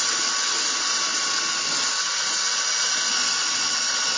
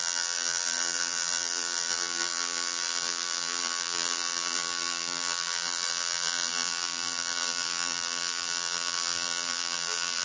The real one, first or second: first